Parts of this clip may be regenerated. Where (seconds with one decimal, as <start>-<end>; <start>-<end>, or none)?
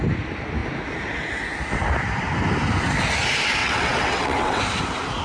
3.6-4.6